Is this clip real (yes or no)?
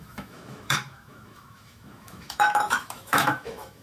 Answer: no